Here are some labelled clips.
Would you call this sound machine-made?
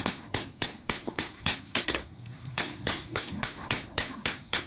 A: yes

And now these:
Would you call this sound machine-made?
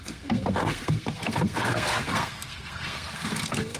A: yes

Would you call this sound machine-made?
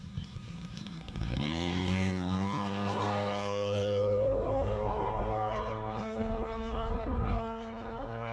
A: yes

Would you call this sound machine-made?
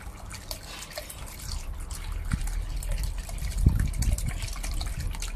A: no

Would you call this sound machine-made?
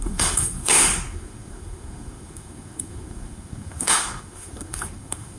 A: yes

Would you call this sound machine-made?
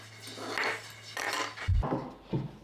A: no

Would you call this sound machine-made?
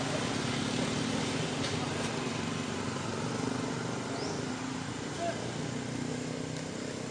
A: no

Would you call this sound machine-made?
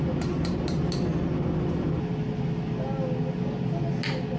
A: no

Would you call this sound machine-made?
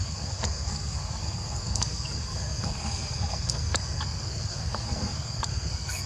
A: yes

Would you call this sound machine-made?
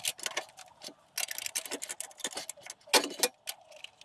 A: no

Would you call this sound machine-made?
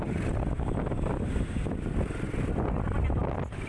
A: no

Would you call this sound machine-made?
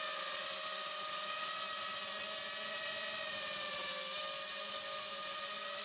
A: no